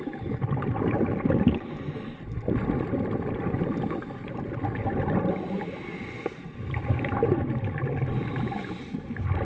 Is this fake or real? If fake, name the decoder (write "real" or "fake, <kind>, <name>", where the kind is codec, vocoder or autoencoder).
real